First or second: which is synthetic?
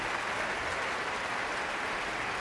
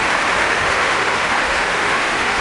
second